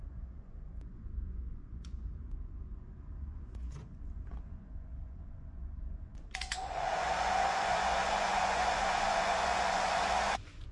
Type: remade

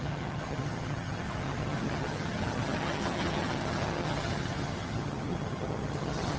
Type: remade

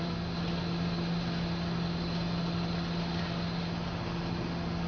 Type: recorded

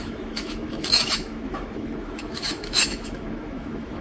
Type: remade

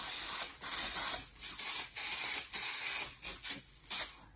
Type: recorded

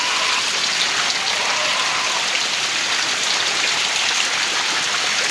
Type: recorded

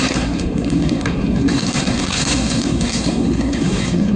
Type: remade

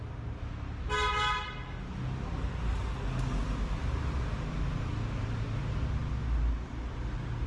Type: recorded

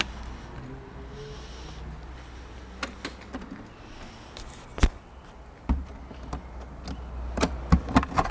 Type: recorded